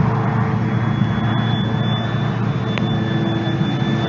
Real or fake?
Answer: real